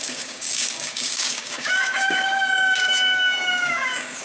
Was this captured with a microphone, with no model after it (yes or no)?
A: no